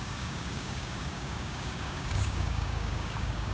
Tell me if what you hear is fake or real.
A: fake